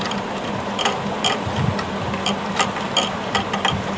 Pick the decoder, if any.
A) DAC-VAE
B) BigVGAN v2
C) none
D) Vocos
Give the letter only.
C